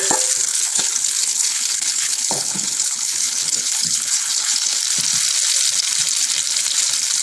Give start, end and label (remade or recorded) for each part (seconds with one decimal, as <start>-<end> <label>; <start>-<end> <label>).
0.0-0.5 recorded; 0.5-4.8 remade; 4.8-7.2 recorded